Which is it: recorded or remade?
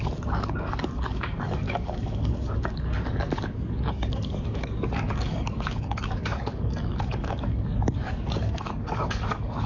remade